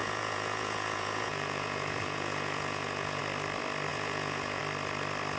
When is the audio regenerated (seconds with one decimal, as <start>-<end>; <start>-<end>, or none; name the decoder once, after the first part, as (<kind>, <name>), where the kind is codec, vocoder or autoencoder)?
0.0-3.2 (vocoder, Vocos); 3.9-4.6

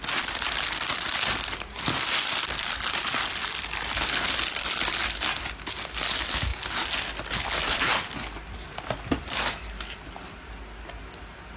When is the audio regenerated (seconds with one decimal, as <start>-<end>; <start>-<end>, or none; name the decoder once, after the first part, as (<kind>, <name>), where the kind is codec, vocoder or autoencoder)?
none